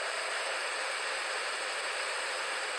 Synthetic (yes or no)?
yes